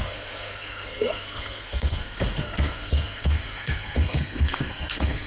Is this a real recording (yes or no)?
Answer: no